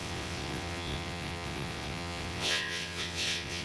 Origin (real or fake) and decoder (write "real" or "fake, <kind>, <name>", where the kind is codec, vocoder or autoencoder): fake, vocoder, WaveNeXt